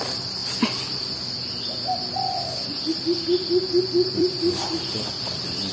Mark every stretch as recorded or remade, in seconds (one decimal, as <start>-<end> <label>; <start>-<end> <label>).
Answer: 0.0-4.2 recorded; 4.2-5.7 remade